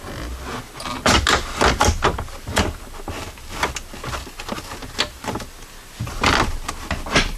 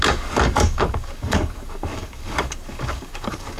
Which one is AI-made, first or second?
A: second